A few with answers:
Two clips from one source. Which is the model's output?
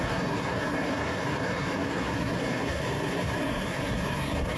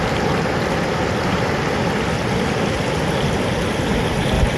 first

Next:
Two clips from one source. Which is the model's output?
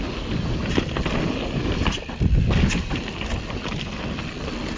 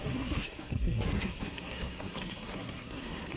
second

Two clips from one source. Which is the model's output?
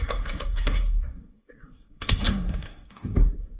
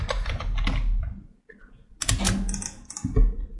first